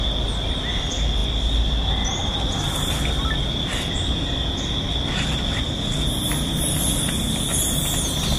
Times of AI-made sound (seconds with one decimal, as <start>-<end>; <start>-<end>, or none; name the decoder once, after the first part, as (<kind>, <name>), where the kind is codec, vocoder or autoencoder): none